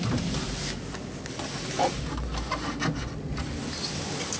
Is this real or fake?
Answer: real